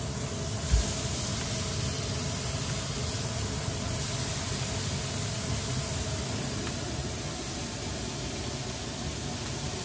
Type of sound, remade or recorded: recorded